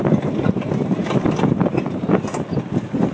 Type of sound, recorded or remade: recorded